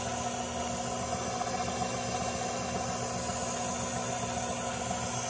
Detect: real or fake real